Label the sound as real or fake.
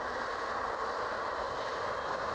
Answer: real